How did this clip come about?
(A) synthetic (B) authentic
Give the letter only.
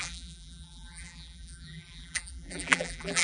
A